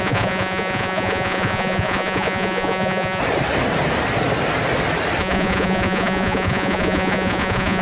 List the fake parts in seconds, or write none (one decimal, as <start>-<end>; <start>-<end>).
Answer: 0.0-3.2; 5.2-7.8